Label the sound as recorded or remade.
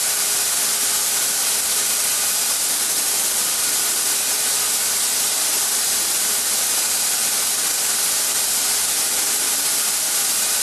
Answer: recorded